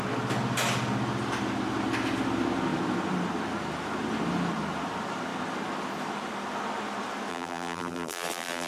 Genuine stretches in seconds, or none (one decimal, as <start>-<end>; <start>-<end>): 0.0-7.3